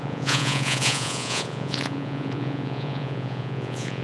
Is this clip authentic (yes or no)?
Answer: no